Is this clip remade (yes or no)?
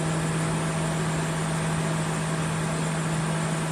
no